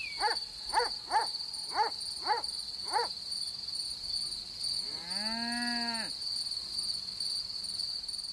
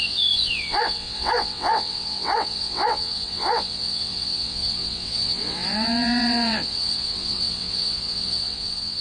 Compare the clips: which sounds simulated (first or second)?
second